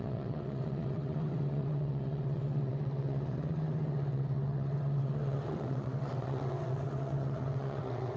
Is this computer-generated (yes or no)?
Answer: yes